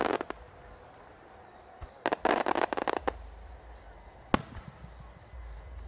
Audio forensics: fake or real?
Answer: real